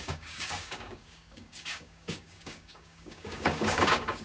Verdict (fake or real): fake